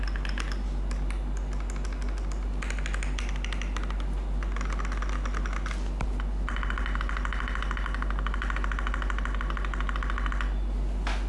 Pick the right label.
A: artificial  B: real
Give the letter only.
B